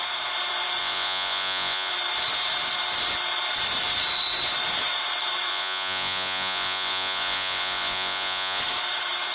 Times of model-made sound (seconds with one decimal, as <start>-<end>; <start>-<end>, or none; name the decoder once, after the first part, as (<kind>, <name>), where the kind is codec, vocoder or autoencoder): 0.8-1.9 (vocoder, Vocos); 5.5-8.6